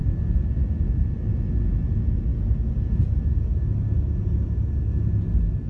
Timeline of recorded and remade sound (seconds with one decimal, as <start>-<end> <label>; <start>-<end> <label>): 0.0-5.7 recorded